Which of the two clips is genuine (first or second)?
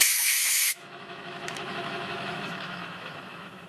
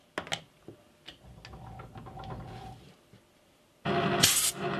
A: second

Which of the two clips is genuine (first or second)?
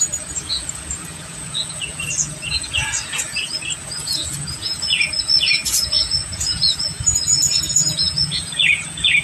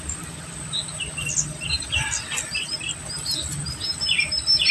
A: second